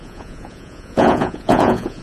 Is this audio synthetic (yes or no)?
yes